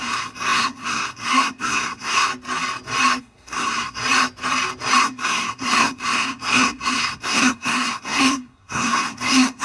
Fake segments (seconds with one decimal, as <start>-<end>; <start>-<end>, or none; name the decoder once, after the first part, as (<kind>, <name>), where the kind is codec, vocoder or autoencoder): 0.0-2.3 (codec, SNAC); 3.2-4.0; 5.0-9.6